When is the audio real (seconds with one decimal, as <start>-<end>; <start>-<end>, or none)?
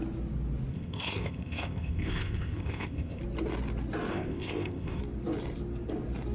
0.0-0.7; 3.2-4.1; 5.0-6.3